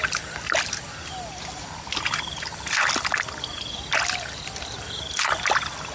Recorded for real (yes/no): yes